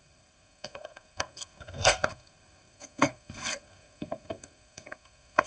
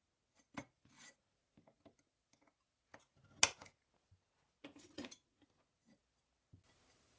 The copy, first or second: first